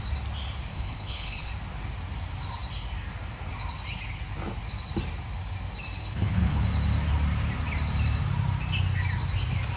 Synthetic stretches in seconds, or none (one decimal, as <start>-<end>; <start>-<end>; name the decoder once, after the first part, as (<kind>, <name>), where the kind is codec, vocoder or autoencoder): 0.7-1.5 (codec, HILCodec); 6.0-6.6